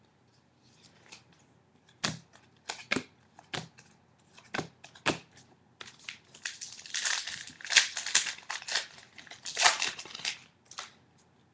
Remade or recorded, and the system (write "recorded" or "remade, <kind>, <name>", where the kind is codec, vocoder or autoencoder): recorded